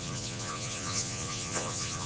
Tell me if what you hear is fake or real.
fake